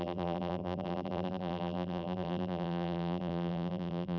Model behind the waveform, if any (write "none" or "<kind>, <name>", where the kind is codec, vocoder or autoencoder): vocoder, BigVGAN v2